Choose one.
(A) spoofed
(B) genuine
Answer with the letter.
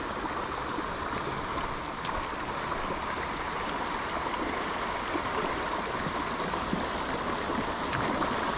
B